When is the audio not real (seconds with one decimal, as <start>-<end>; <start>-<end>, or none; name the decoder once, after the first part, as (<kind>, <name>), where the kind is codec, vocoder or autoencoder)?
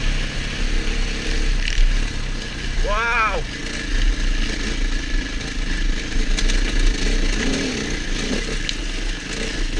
none